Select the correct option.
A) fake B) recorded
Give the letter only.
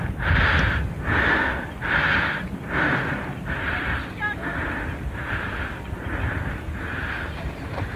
B